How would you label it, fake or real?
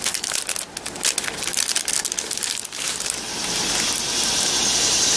real